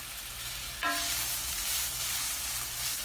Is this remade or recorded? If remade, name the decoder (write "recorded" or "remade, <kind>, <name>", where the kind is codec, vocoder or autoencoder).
remade, vocoder, BigVGAN v2